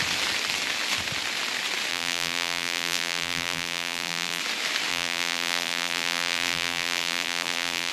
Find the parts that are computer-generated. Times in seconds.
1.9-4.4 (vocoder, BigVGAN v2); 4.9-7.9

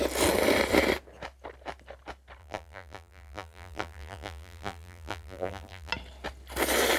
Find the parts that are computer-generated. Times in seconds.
2.4-5.9 (vocoder, BigVGAN v2)

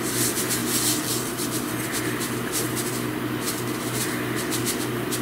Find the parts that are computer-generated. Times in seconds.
none